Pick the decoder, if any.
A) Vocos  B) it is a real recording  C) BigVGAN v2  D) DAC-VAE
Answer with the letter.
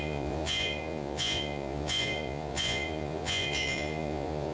A